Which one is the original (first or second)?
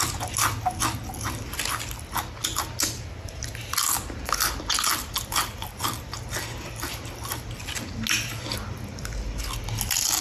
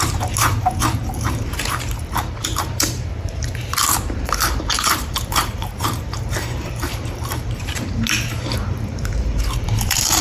first